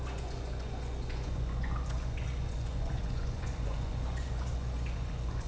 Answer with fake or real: fake